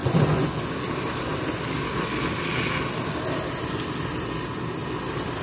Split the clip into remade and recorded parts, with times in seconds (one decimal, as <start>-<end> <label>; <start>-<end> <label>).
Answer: 0.0-0.6 remade; 0.6-5.4 recorded